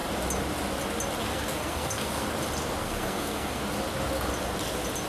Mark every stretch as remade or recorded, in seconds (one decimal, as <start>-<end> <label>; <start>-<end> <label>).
0.0-1.3 recorded; 1.3-2.3 remade; 2.3-2.8 recorded; 2.8-3.6 remade; 3.6-5.1 recorded